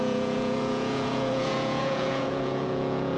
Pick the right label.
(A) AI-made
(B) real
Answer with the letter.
A